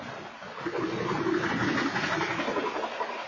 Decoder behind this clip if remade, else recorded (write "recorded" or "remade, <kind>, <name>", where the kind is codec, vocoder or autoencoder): recorded